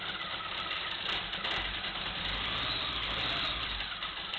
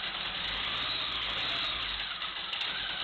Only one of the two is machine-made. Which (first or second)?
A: first